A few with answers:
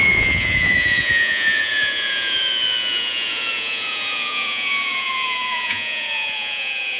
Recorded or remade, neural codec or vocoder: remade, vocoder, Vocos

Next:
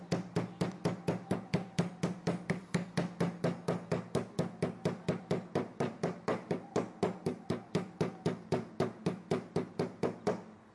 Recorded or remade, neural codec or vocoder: recorded